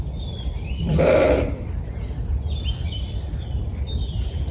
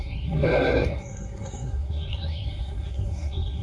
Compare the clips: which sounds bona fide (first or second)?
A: first